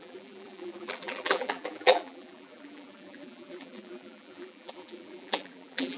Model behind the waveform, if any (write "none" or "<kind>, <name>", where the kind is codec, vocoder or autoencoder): vocoder, BigVGAN v2